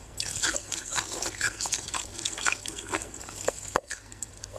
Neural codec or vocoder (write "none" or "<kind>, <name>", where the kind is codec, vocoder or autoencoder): codec, SNAC